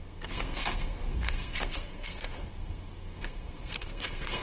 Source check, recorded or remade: remade